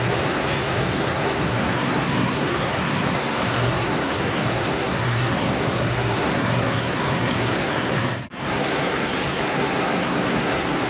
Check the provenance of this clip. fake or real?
fake